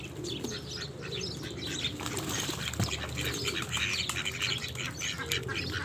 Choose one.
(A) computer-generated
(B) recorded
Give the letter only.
B